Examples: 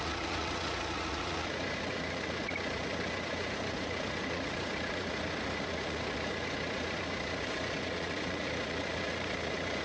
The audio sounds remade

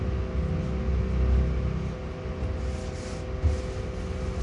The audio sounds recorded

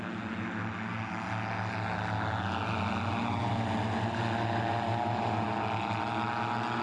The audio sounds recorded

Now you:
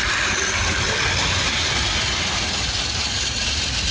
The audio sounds recorded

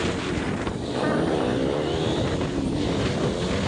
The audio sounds recorded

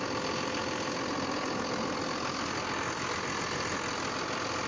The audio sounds recorded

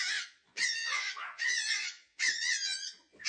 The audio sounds remade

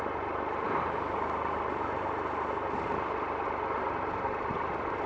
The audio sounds recorded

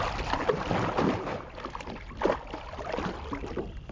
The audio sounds recorded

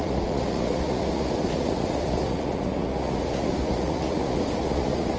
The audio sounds remade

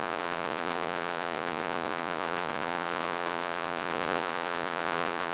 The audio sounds remade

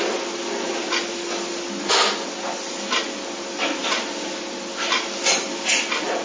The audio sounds recorded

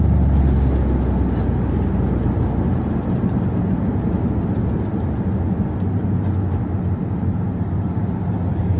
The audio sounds recorded